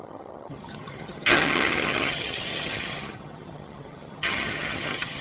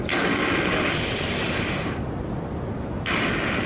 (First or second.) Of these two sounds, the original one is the second